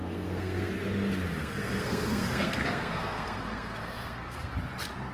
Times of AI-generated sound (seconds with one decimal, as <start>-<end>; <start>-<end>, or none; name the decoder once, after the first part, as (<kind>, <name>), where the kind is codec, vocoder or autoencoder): 0.0-0.7 (codec, SNAC); 1.4-4.5